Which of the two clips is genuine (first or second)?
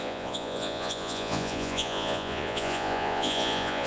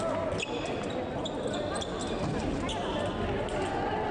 second